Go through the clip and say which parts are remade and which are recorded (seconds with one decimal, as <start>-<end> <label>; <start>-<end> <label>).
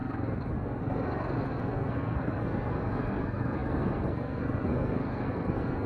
0.0-5.9 remade